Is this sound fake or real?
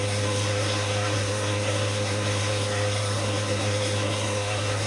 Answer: fake